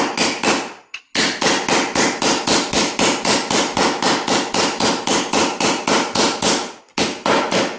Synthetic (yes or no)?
no